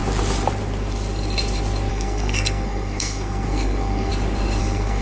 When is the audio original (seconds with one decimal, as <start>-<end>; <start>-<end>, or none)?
0.0-1.9; 4.1-4.6